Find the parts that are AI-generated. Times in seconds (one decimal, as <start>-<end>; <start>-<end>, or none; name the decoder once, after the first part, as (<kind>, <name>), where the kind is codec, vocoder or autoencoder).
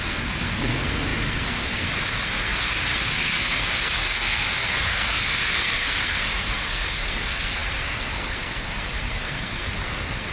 0.0-10.3 (codec, SNAC)